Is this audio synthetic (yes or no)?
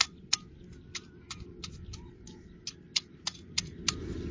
no